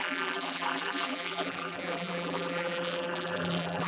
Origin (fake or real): fake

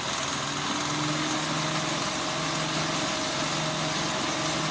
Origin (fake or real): real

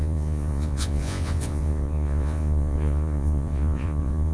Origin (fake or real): fake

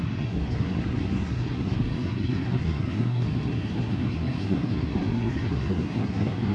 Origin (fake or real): fake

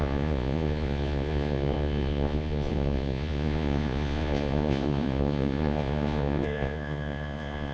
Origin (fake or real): fake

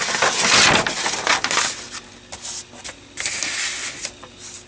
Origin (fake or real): real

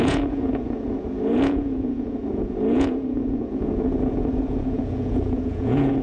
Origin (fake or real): fake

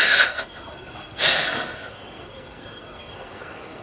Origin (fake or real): fake